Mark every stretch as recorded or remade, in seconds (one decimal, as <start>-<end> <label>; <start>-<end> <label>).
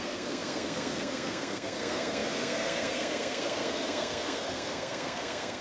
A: 0.0-5.6 remade